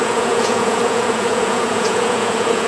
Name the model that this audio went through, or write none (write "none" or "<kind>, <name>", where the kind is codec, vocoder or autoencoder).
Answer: vocoder, Vocos